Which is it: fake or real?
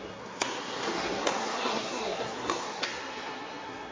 fake